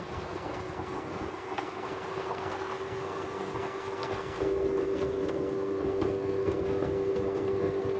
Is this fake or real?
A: fake